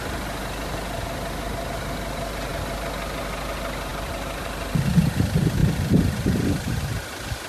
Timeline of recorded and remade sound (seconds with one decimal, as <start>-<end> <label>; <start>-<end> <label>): 0.0-3.9 recorded; 3.9-4.4 remade; 4.4-7.5 recorded